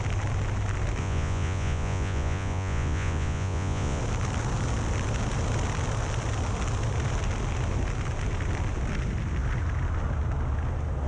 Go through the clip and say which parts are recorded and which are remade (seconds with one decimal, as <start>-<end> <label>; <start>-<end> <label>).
0.0-1.0 recorded; 1.0-4.0 remade; 4.0-11.1 recorded